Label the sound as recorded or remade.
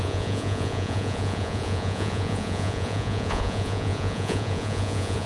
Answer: remade